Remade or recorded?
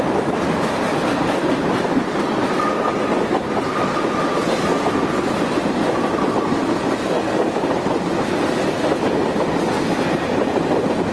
recorded